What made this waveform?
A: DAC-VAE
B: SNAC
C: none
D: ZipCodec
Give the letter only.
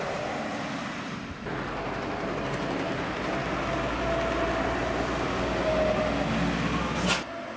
C